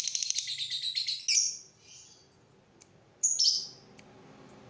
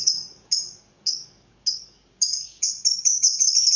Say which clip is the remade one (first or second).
second